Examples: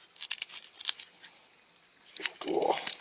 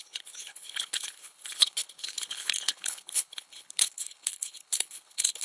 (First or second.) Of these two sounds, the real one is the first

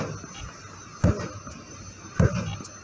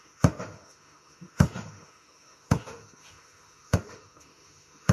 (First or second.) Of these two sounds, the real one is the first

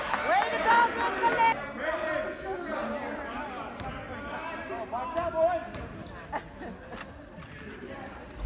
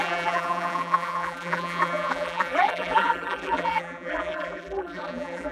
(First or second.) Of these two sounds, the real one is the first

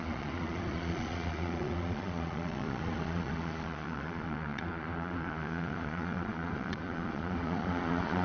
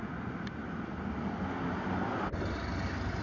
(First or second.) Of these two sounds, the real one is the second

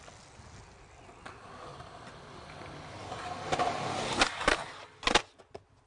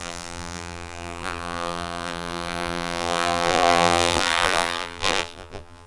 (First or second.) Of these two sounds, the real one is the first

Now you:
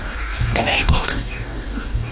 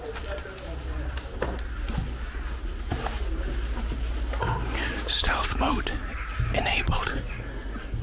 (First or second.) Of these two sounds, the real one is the second